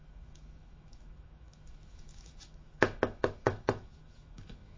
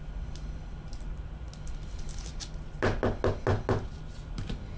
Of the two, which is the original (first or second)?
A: second